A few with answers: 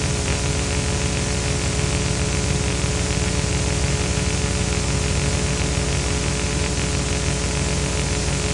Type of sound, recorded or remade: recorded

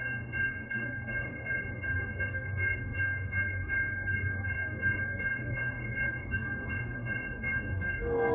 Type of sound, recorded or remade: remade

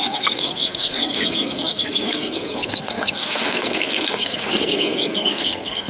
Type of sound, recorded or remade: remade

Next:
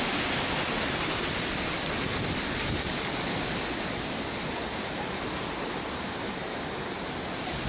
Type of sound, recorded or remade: recorded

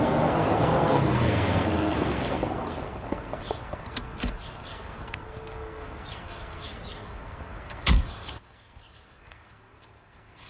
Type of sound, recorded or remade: remade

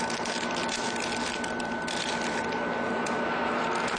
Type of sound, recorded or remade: recorded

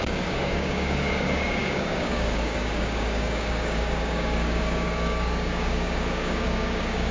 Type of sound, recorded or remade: remade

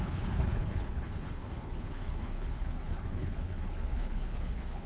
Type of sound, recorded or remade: remade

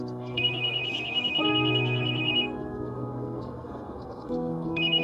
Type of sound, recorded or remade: remade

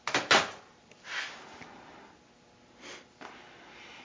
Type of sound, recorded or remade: recorded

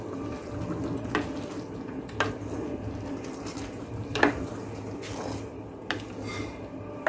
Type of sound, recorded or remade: recorded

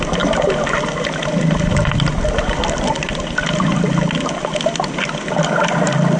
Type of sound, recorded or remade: recorded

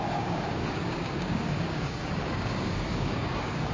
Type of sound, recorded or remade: remade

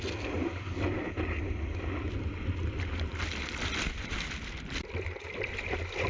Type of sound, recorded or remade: recorded